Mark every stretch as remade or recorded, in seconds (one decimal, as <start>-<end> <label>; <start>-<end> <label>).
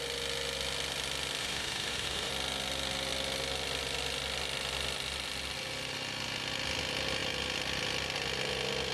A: 0.0-1.4 recorded; 1.4-2.3 remade; 2.3-8.9 recorded